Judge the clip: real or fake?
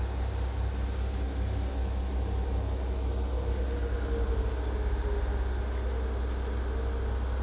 real